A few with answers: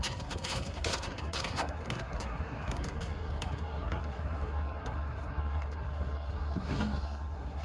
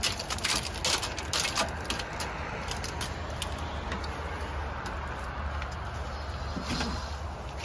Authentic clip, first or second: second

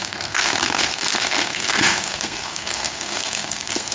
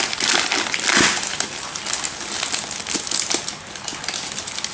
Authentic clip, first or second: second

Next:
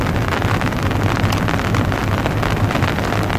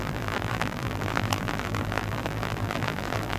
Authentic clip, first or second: first